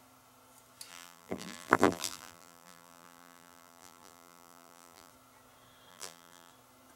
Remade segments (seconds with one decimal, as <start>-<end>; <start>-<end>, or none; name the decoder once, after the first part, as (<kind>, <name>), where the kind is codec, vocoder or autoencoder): 0.9-5.1 (vocoder, BigVGAN v2); 5.9-6.5